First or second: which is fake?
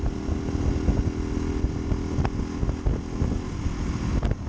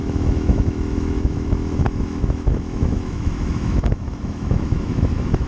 second